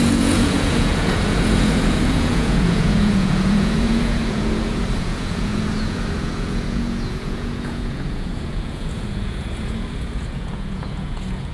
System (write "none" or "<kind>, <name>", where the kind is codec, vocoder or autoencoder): vocoder, Vocos